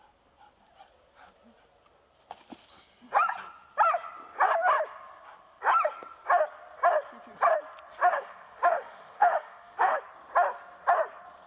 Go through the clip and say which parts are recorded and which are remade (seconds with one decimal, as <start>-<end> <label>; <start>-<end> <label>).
0.0-7.9 recorded; 7.9-10.0 remade; 10.0-11.5 recorded